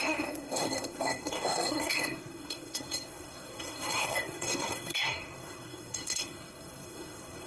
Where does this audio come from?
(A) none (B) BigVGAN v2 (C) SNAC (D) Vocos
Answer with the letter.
C